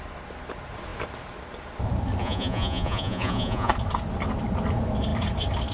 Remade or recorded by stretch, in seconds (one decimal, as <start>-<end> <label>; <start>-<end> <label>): 0.0-2.2 recorded; 2.2-3.7 remade; 3.7-5.7 recorded

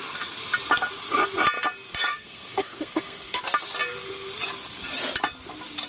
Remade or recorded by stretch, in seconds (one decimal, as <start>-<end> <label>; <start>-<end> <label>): 0.0-2.1 recorded; 2.1-3.4 remade; 3.4-5.9 recorded

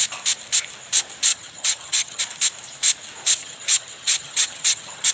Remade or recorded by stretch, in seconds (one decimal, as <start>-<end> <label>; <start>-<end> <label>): 0.0-1.3 recorded; 1.3-2.2 remade; 2.2-3.4 recorded; 3.4-5.1 remade

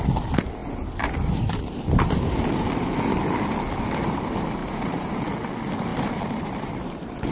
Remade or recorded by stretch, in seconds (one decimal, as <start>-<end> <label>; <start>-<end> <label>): 0.0-0.6 recorded; 0.6-2.5 remade; 2.5-4.6 recorded; 4.6-5.1 remade; 5.1-5.9 recorded; 5.9-7.3 remade

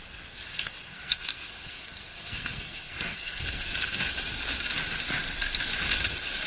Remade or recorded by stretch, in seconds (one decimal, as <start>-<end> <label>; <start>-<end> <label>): 0.0-0.9 recorded; 0.9-4.1 remade; 4.1-6.5 recorded